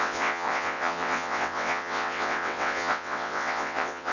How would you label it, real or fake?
fake